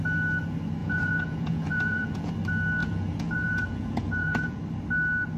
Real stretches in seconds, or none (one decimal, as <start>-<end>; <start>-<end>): 0.0-0.8; 2.3-2.8; 4.6-5.4